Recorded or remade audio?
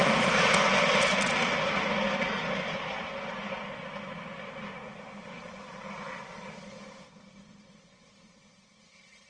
recorded